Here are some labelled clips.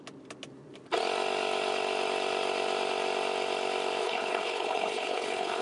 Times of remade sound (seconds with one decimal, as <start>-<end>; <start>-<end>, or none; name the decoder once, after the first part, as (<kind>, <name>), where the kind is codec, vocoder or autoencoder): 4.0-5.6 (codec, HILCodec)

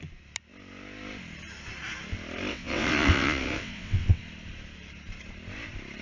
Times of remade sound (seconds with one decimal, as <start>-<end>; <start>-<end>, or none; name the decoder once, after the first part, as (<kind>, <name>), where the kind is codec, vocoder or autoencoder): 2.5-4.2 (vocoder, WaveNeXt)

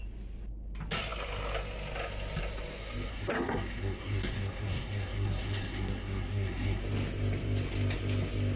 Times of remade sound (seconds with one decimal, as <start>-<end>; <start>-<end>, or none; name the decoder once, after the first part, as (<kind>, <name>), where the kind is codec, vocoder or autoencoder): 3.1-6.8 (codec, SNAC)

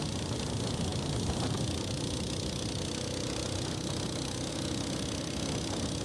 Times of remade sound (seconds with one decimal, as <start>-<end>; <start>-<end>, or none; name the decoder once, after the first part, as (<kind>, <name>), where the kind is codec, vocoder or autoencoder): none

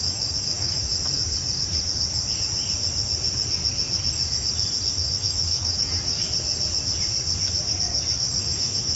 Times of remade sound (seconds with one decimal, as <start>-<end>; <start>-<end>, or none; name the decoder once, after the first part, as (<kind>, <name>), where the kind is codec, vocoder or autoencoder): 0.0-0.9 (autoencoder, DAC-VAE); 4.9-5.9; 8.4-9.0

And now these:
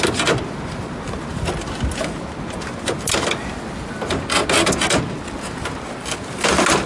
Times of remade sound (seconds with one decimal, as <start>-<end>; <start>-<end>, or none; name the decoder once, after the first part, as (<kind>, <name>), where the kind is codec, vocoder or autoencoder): none